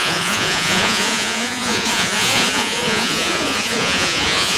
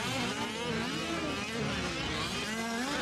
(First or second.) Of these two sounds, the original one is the second